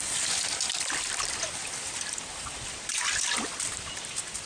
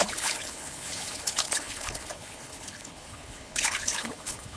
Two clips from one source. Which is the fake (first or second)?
second